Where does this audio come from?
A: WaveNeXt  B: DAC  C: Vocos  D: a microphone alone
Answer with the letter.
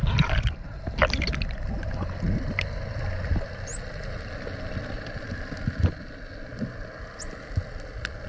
D